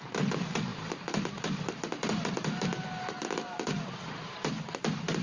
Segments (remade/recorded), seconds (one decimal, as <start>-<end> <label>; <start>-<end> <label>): 0.0-5.2 remade